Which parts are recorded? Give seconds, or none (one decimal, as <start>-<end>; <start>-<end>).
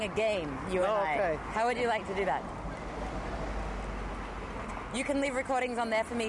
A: 0.0-6.3